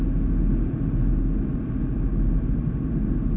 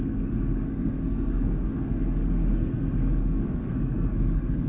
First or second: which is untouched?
first